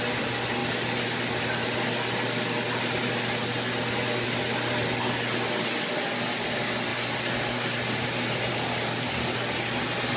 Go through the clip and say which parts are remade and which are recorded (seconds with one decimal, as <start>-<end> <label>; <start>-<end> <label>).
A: 0.0-10.2 recorded